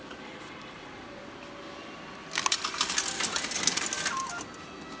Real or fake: real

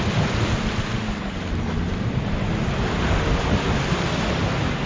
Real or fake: real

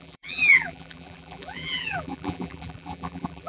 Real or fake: fake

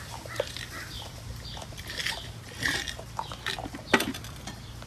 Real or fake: real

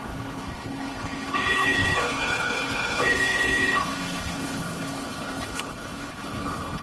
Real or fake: fake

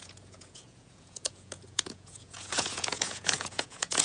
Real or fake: fake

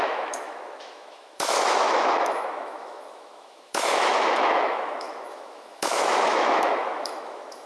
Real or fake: fake